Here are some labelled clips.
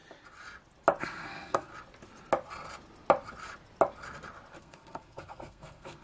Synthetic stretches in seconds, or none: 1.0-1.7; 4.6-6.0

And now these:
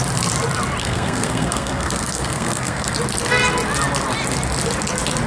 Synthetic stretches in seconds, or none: 0.8-2.9